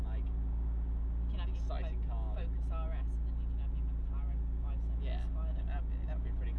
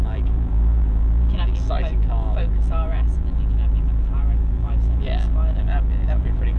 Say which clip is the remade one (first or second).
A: second